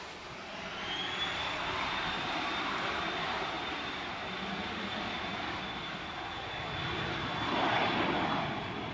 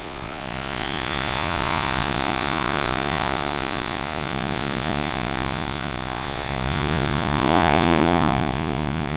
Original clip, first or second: first